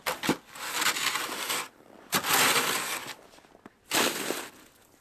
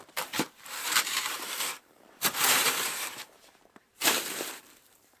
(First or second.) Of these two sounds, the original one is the first